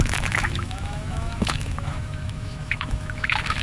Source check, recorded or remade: remade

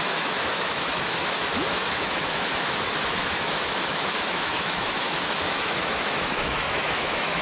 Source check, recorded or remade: remade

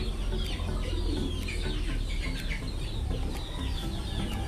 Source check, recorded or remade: recorded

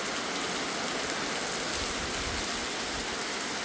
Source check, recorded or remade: recorded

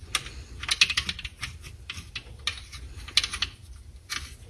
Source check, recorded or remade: recorded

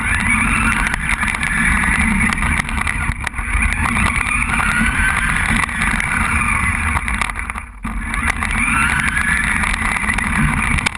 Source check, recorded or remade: recorded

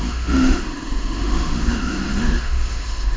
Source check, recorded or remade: remade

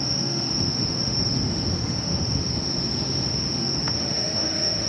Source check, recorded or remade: remade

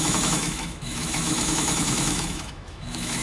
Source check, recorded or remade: remade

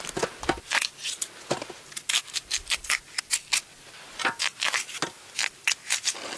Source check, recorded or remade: recorded